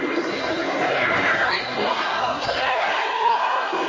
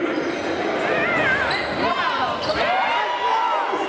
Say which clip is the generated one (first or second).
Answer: first